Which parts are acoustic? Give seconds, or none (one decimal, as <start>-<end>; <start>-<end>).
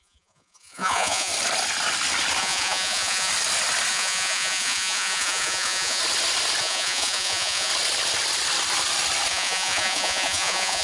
1.3-2.4; 3.3-3.9; 6.0-6.6; 7.7-9.3